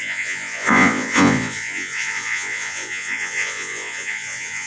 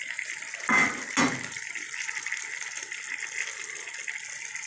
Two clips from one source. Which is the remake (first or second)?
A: first